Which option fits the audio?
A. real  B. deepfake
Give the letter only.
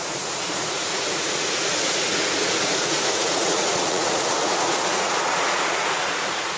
B